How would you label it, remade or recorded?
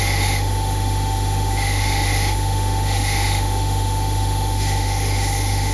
remade